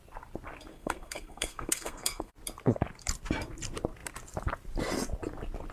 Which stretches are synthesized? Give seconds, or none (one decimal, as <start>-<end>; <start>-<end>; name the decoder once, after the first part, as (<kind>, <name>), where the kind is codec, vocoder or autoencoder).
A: 0.7-2.3 (codec, SNAC)